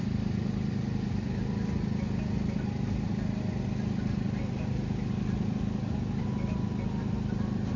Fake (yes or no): no